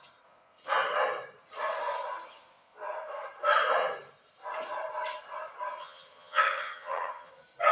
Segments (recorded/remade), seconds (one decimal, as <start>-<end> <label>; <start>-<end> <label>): 0.0-5.8 recorded; 5.8-7.3 remade; 7.3-7.7 recorded